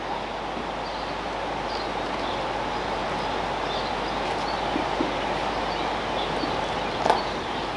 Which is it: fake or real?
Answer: real